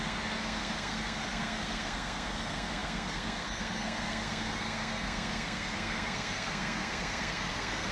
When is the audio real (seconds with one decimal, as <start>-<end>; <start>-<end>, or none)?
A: none